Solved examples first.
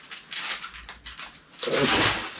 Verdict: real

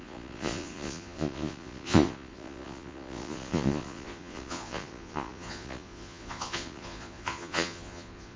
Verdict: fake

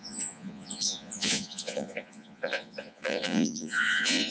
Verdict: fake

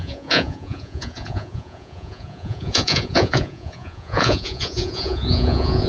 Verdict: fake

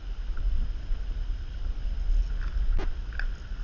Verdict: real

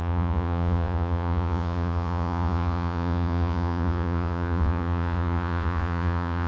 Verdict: fake